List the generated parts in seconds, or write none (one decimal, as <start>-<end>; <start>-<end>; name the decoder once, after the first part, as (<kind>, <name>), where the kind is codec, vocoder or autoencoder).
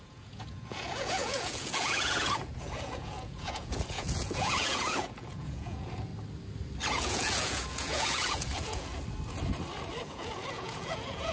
0.0-6.1 (vocoder, Vocos); 6.9-8.9; 10.0-11.3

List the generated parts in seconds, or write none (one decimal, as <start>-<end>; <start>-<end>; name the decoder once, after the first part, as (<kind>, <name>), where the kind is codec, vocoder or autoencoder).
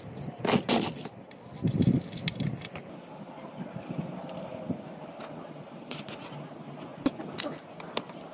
none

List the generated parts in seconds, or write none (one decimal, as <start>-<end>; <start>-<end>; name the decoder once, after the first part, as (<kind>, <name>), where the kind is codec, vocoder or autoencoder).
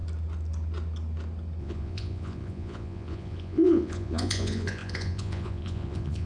1.6-6.3 (vocoder, Vocos)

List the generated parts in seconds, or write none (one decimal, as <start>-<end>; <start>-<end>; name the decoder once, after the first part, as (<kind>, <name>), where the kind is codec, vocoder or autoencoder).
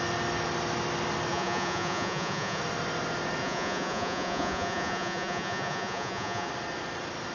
1.3-2.6 (vocoder, Vocos); 3.4-6.5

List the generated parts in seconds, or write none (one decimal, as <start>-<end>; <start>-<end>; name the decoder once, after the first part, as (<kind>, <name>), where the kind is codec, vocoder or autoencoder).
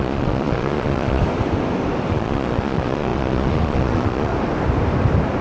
0.0-1.2 (vocoder, Vocos); 2.1-4.3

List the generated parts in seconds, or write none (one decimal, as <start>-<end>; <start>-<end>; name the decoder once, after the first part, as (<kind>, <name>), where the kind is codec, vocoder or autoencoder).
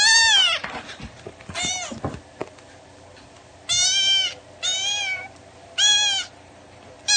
none